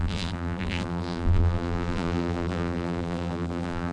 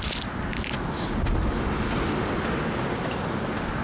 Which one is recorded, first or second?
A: second